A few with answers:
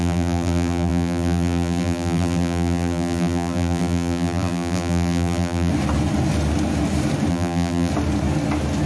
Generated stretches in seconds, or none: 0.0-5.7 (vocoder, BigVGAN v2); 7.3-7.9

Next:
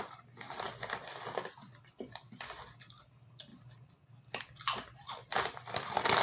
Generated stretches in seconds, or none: none

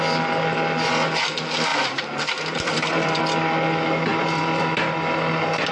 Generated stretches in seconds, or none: 1.7-3.2 (vocoder, BigVGAN v2); 4.1-4.6

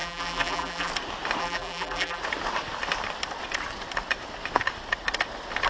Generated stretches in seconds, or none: 0.0-0.9 (vocoder, BigVGAN v2); 1.4-2.2

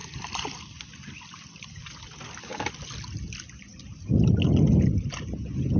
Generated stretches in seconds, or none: 0.0-2.4 (vocoder, BigVGAN v2); 3.7-4.3

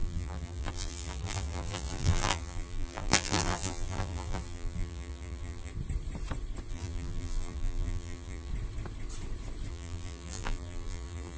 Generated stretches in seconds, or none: 0.0-5.7 (vocoder, BigVGAN v2); 6.7-8.5; 9.7-11.4

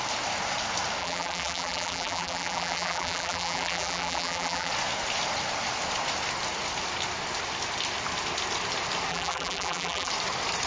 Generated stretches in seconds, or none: 1.0-4.7 (vocoder, BigVGAN v2); 9.1-10.1